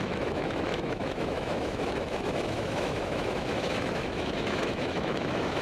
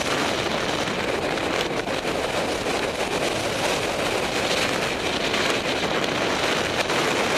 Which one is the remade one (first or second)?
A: first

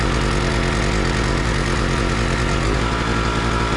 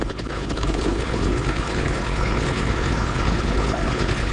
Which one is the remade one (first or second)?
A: second